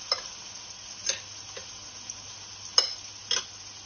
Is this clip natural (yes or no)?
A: yes